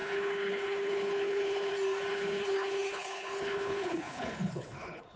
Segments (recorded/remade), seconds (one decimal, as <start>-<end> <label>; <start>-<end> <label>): 0.0-1.7 remade; 1.7-2.1 recorded; 2.1-5.2 remade